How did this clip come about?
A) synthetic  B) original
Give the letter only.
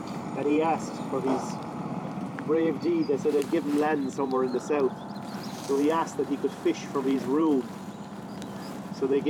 A